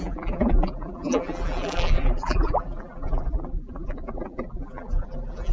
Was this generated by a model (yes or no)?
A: yes